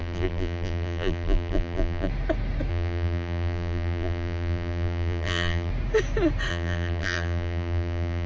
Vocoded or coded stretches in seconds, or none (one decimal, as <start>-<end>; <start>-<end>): 0.0-2.1; 2.7-5.7; 6.5-8.3